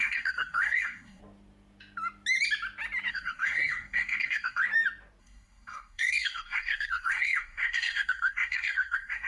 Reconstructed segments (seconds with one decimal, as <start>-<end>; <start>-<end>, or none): 0.0-1.2; 3.1-4.6; 5.2-9.3